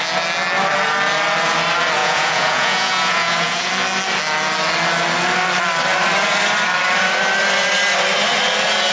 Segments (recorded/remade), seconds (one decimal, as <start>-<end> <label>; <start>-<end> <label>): 0.0-2.0 recorded; 2.0-3.7 remade; 3.7-8.9 recorded

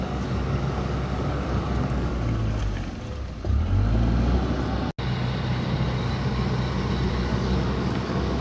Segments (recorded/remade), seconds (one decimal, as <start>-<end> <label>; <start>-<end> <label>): 0.0-2.1 remade; 2.1-7.1 recorded; 7.1-8.4 remade